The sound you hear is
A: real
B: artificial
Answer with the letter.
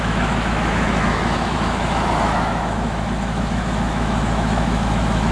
B